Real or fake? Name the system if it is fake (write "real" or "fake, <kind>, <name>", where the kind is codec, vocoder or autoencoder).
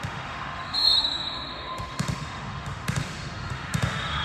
fake, autoencoder, DAC-VAE